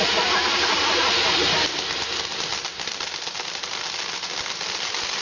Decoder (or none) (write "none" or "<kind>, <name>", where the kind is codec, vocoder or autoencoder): none